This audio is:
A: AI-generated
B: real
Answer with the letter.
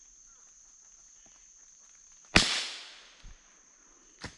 B